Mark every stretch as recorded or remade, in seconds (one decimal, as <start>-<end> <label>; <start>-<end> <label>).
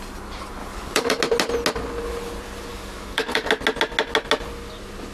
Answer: 0.0-0.6 recorded; 0.6-1.2 remade; 1.2-2.7 recorded; 2.7-3.5 remade; 3.5-5.1 recorded